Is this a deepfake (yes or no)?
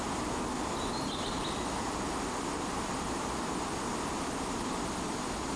no